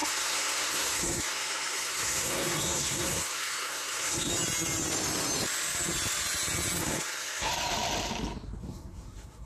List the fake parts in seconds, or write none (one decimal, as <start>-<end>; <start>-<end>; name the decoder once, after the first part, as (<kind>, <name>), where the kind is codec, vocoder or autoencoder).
0.0-4.3 (codec, SNAC); 6.8-7.5; 8.6-9.5